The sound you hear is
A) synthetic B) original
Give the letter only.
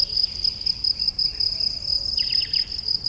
A